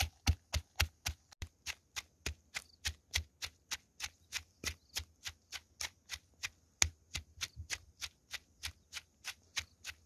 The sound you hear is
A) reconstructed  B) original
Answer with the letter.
B